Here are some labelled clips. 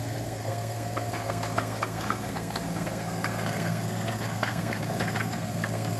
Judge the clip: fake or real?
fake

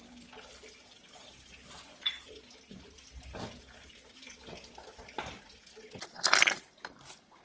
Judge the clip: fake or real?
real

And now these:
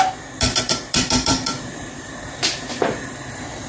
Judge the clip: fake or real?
fake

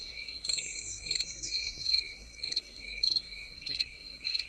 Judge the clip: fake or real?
fake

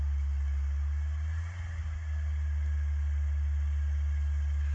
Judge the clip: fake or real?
real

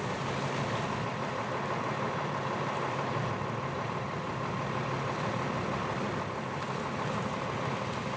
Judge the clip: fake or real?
real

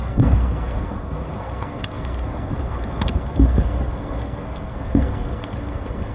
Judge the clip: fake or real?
fake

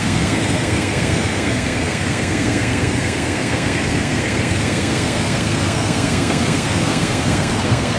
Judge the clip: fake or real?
fake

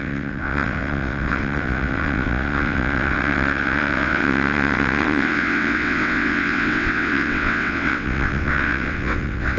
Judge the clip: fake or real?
fake